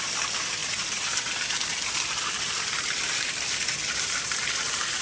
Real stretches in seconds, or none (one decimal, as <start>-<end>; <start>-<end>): 0.0-5.0